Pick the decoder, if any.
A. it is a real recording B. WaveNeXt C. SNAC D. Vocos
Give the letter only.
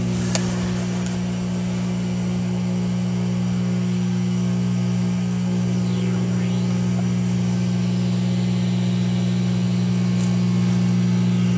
A